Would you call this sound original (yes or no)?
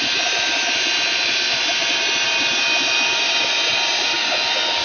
yes